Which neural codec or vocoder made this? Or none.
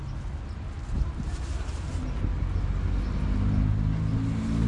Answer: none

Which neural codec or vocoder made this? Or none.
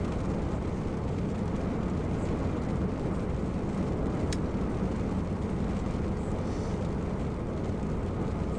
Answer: none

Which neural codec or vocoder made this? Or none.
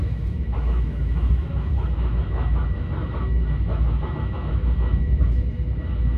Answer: autoencoder, DAC-VAE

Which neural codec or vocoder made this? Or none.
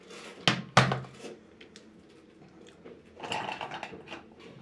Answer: none